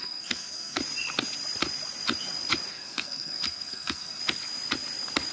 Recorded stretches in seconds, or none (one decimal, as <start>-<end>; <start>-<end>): 0.8-2.7; 4.2-5.3